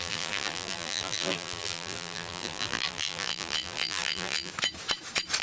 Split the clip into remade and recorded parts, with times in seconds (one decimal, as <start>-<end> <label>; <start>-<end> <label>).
0.0-4.5 remade; 4.5-5.4 recorded

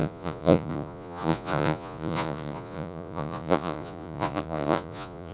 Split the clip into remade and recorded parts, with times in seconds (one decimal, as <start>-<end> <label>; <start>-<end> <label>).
0.0-5.3 remade